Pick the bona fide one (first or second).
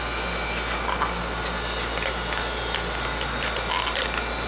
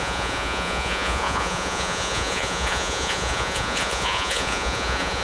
first